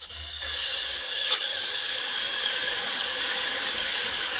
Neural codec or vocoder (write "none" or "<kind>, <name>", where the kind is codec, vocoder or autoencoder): codec, DAC